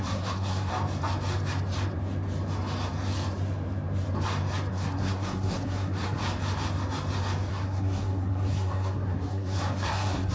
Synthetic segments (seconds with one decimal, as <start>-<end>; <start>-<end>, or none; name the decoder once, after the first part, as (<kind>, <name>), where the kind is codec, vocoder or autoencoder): 0.0-0.7 (codec, SNAC); 4.7-6.2; 7.5-10.3